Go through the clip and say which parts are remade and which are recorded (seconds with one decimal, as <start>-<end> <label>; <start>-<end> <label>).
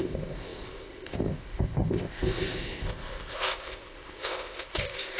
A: 0.0-5.2 remade